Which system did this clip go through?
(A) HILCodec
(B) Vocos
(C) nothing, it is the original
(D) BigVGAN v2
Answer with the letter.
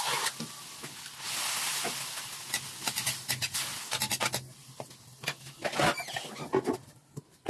C